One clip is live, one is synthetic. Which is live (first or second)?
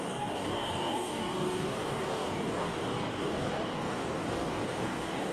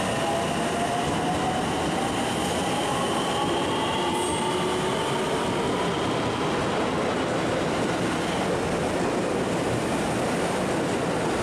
second